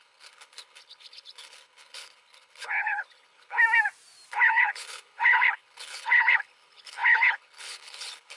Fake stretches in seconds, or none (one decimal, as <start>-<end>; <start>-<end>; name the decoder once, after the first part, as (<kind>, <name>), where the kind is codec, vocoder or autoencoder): 0.0-3.6 (codec, HILCodec); 4.3-8.4